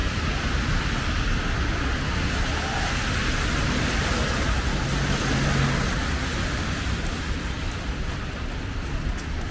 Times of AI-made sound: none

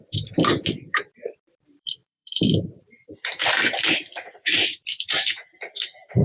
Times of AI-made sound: 0.0-6.2

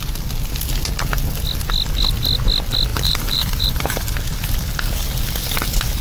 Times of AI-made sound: 2.9-4.0

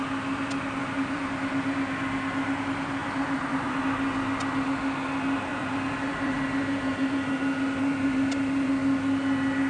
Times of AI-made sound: 0.8-1.3; 3.0-3.8; 5.5-8.7

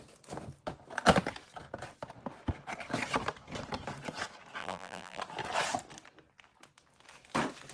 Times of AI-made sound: 4.6-5.2

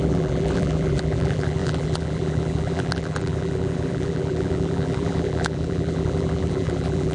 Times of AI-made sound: 0.0-7.1

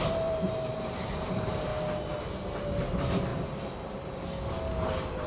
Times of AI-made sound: 0.0-1.7; 2.8-3.3

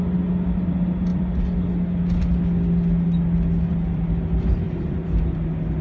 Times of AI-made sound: 1.1-1.7; 3.7-5.2